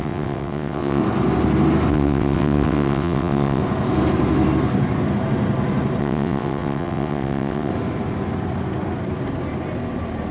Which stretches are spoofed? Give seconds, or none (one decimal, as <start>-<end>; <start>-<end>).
0.0-1.0; 1.9-3.6; 6.0-7.7